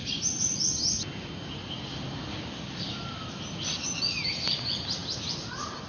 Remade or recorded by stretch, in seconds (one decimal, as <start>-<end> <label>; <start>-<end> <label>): 0.0-5.9 recorded